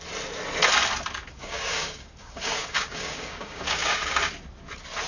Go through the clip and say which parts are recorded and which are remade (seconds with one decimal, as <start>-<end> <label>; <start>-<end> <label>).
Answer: 0.0-1.4 recorded; 1.4-4.3 remade; 4.3-5.1 recorded

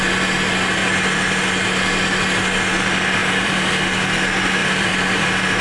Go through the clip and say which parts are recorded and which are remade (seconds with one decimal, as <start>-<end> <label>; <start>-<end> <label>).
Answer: 0.0-3.2 recorded; 3.2-3.7 remade; 3.7-4.6 recorded; 4.6-5.6 remade

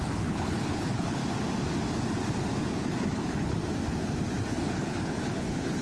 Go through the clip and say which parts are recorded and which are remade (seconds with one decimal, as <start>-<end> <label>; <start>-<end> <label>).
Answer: 0.0-1.2 remade; 1.2-2.7 recorded; 2.7-3.6 remade; 3.6-4.5 recorded; 4.5-5.8 remade

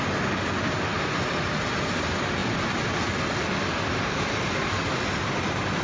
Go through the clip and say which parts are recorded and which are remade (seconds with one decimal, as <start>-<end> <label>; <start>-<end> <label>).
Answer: 0.0-5.8 recorded

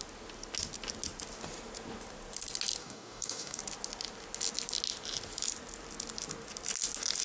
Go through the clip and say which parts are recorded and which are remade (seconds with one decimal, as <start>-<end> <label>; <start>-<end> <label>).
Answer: 0.0-2.8 recorded; 2.8-3.6 remade; 3.6-7.2 recorded

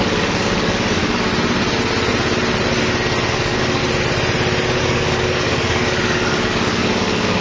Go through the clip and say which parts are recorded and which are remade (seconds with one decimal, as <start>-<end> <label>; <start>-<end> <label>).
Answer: 0.0-1.3 remade; 1.3-3.3 recorded; 3.3-3.8 remade; 3.8-4.8 recorded; 4.8-7.4 remade